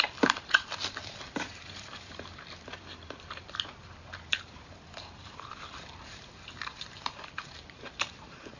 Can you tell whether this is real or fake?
fake